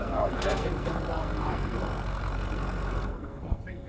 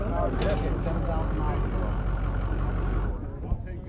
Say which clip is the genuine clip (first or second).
second